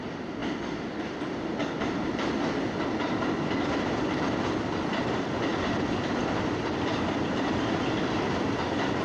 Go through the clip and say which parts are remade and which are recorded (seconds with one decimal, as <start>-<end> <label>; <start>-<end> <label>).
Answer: 0.0-0.4 remade; 0.4-5.0 recorded; 5.0-9.0 remade